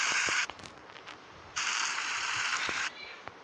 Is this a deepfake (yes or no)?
yes